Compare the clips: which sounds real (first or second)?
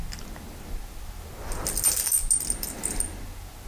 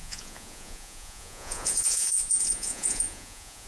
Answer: first